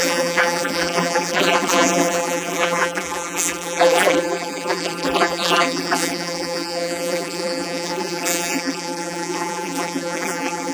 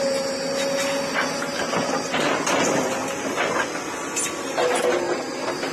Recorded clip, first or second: second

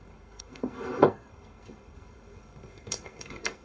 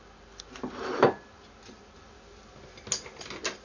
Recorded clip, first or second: second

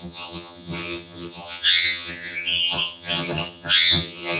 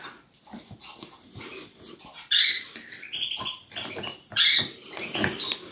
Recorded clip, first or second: second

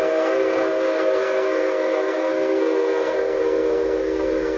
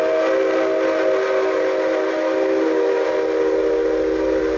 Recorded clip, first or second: second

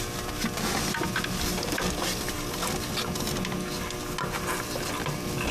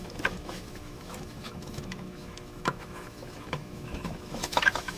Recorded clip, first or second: first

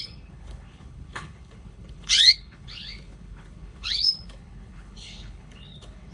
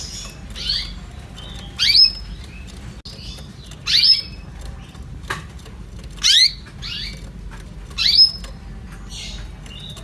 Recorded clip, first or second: second